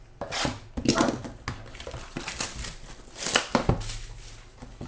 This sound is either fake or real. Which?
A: real